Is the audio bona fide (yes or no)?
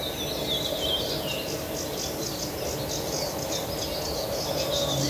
yes